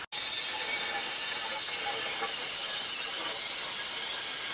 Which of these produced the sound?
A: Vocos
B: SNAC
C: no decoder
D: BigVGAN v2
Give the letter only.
C